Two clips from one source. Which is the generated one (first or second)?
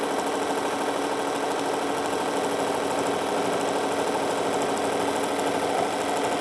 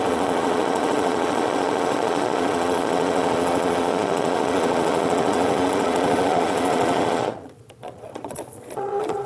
second